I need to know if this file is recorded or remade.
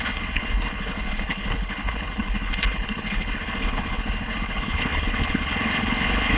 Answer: remade